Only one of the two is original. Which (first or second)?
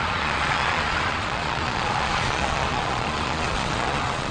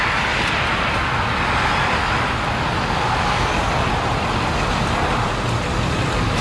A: second